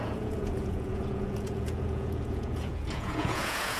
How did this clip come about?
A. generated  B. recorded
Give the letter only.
A